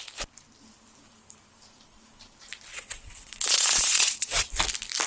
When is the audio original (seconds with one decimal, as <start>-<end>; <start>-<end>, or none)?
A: 0.0-2.7; 4.5-5.1